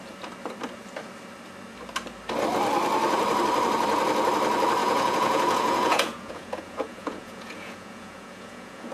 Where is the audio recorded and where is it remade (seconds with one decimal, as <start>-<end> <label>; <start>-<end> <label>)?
0.0-4.8 recorded; 4.8-8.9 remade